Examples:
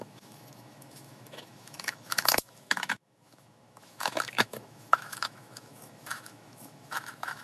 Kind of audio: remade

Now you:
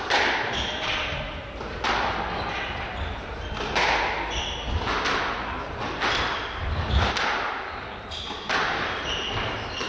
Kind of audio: recorded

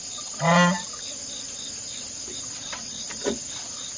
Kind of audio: recorded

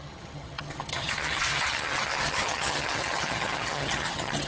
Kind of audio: remade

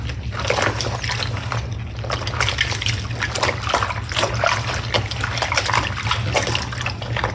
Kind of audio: recorded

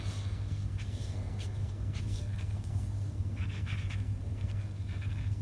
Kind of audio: remade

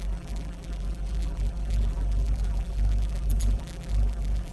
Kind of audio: remade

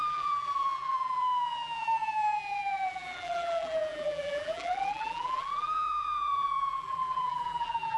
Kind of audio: remade